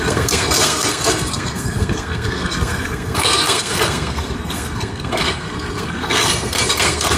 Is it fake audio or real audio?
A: fake